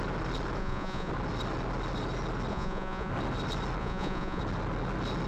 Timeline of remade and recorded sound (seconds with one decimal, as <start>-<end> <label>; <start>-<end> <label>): 0.0-0.6 recorded; 0.6-1.1 remade; 1.1-2.5 recorded; 2.5-3.1 remade; 3.1-3.8 recorded; 3.8-4.4 remade; 4.4-5.3 recorded